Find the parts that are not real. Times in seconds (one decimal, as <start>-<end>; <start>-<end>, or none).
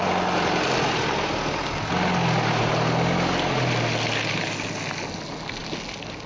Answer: none